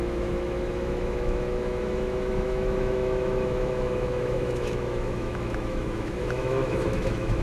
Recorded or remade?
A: remade